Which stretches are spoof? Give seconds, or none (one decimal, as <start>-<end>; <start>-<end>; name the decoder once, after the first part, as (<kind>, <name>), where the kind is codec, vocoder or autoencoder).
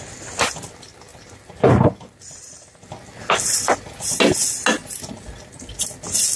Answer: 1.1-2.4 (vocoder, BigVGAN v2); 3.7-4.2